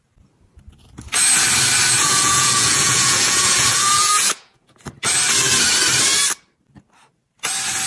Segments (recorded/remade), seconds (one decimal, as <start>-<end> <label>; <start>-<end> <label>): 0.0-2.0 recorded; 2.0-4.8 remade; 4.8-7.9 recorded